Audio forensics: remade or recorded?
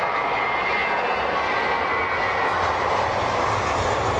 recorded